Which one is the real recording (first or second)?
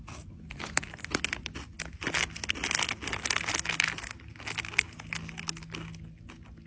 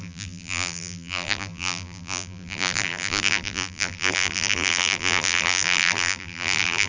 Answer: first